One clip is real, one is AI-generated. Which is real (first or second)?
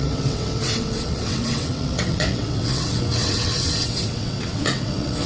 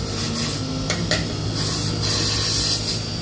second